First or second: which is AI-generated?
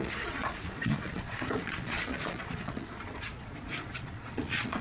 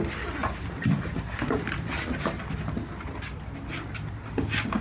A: first